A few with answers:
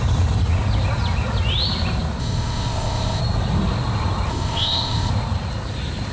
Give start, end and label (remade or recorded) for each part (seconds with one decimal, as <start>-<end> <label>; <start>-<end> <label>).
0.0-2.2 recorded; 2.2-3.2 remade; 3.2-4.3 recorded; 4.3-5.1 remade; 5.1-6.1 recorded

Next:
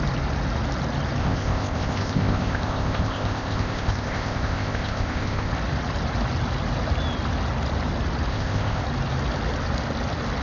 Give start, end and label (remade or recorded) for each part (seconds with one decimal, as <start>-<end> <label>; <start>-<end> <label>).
0.0-1.2 recorded; 1.2-5.5 remade; 5.5-8.3 recorded; 8.3-8.8 remade; 8.8-10.4 recorded

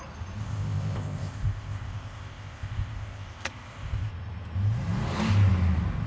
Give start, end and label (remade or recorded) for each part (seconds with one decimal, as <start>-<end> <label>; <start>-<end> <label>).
0.0-0.4 recorded; 0.4-4.1 remade; 4.1-6.1 recorded

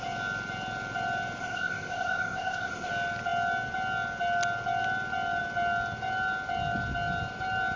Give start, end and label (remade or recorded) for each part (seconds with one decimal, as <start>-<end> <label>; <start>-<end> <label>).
0.0-1.4 recorded; 1.4-2.9 remade; 2.9-7.8 recorded

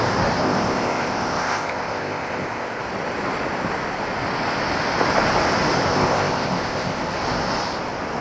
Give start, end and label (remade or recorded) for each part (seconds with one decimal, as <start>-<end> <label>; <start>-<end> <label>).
0.0-0.4 recorded; 0.4-2.8 remade; 2.8-5.9 recorded; 5.9-7.0 remade; 7.0-8.2 recorded